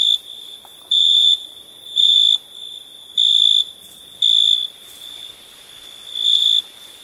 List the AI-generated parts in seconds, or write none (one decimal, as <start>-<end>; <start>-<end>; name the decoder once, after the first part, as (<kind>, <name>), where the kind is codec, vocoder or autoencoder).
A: 0.7-2.2 (vocoder, BigVGAN v2)

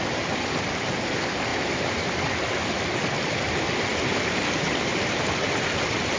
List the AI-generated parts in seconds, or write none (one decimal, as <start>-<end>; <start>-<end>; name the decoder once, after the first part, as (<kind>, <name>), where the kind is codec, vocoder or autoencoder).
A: 4.9-5.5 (vocoder, BigVGAN v2)

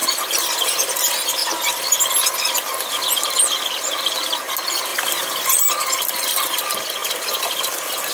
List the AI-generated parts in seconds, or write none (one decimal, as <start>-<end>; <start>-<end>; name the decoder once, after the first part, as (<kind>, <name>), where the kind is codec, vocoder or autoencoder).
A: 0.0-0.6 (vocoder, BigVGAN v2); 4.9-6.6

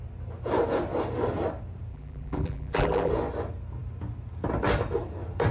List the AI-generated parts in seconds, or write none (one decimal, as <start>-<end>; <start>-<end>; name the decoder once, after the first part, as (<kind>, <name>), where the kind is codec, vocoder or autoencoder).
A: 1.9-3.1 (vocoder, BigVGAN v2)

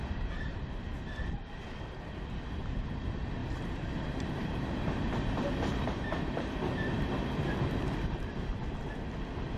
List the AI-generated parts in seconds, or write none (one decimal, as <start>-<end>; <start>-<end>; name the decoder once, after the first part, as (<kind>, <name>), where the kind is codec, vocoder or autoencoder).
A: 3.4-7.5 (vocoder, BigVGAN v2)

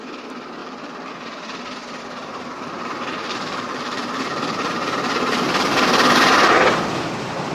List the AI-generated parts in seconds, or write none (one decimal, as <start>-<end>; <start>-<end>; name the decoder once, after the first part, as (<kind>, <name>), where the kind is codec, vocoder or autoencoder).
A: 0.6-1.1 (vocoder, BigVGAN v2); 2.2-5.9

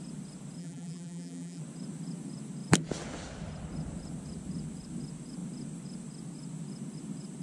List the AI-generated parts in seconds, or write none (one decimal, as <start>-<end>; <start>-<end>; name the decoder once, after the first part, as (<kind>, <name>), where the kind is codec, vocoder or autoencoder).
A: 0.6-1.6 (vocoder, BigVGAN v2)